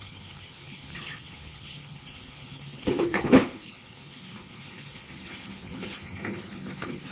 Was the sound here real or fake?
fake